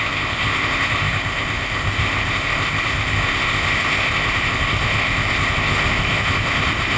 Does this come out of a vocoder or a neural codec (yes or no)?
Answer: yes